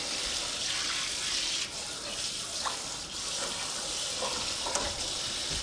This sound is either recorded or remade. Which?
recorded